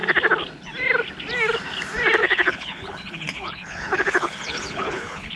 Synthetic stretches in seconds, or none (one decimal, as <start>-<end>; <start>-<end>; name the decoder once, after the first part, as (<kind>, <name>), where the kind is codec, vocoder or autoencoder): 2.2-5.4 (codec, HILCodec)